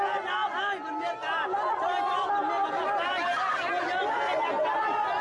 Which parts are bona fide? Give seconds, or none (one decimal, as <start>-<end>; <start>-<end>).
0.0-5.2